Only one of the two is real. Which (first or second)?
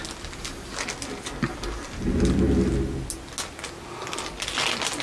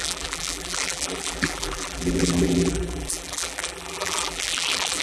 first